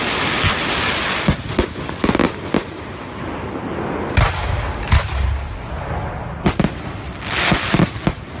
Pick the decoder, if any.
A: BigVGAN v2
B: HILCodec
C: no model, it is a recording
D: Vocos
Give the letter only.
C